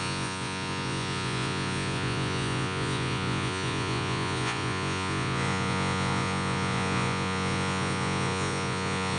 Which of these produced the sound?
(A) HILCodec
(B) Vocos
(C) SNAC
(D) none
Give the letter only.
B